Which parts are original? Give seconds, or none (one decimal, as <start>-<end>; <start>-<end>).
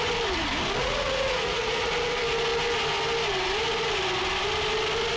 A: 0.0-0.8; 1.9-5.2